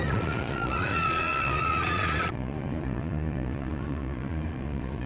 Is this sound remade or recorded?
remade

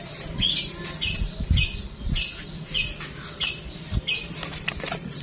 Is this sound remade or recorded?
recorded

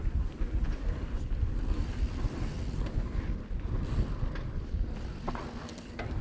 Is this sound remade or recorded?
recorded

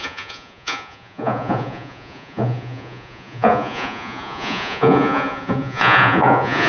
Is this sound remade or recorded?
remade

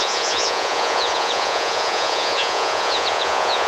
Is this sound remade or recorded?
remade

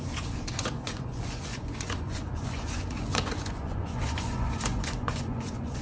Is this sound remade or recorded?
remade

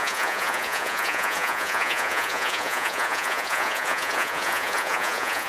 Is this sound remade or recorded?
remade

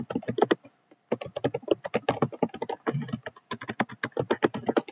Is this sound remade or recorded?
recorded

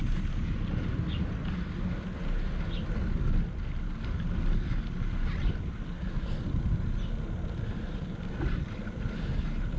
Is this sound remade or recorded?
recorded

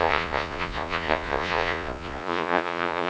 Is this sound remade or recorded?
remade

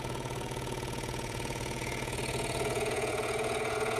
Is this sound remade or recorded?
remade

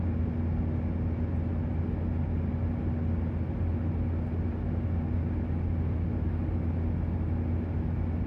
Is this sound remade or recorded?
recorded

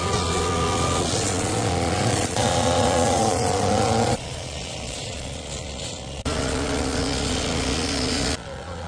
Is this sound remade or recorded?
remade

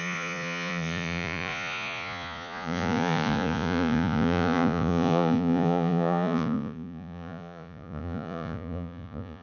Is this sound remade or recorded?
remade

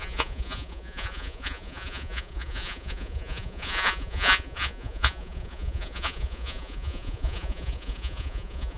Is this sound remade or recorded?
remade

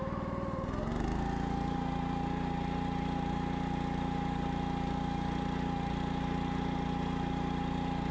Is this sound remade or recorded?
recorded